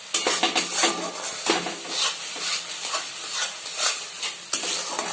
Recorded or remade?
recorded